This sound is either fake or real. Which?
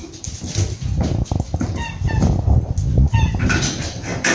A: real